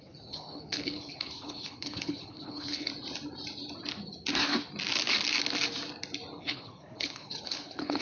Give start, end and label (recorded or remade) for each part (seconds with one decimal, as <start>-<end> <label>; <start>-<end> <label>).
0.0-2.9 remade; 2.9-6.4 recorded; 6.4-8.0 remade